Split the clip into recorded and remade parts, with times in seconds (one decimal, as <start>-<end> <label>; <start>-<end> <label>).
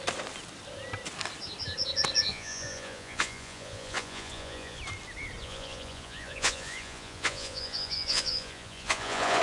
0.0-2.3 recorded; 2.3-4.8 remade; 4.8-5.4 recorded; 5.4-9.4 remade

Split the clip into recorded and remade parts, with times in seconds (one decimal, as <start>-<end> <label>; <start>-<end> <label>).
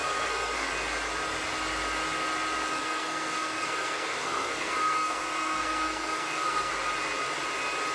0.0-0.7 remade; 0.7-2.8 recorded; 2.8-6.7 remade; 6.7-7.9 recorded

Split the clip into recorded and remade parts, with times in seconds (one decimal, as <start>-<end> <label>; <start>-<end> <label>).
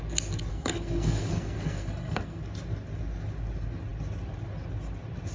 0.0-0.5 recorded; 0.5-2.4 remade; 2.4-5.3 recorded